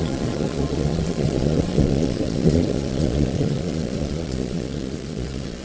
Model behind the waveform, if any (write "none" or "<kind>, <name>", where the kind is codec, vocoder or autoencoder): vocoder, Vocos